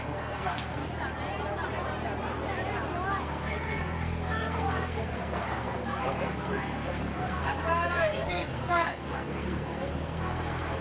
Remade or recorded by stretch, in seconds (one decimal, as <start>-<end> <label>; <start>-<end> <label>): 0.0-0.8 remade; 0.8-3.2 recorded; 3.2-10.8 remade